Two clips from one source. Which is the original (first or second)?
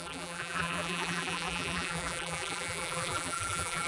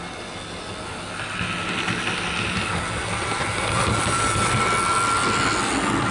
second